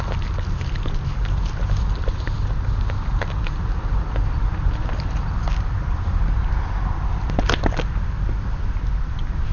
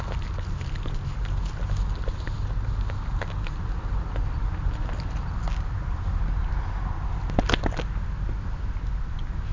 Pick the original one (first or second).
second